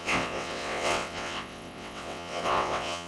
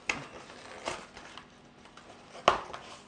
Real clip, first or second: second